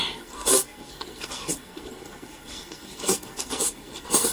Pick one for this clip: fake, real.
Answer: fake